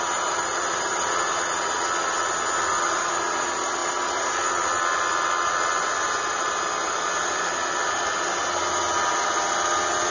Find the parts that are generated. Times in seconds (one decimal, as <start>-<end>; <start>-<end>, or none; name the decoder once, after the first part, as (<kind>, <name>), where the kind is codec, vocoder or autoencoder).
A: none